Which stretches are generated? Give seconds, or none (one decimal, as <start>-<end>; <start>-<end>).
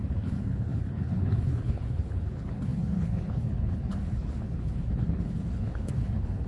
0.0-6.5